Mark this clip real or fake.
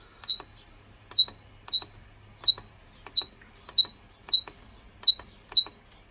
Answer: real